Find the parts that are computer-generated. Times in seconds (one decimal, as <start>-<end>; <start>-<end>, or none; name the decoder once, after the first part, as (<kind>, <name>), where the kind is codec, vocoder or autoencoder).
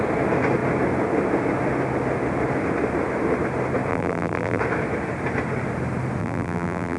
3.9-4.6 (vocoder, BigVGAN v2); 6.2-7.0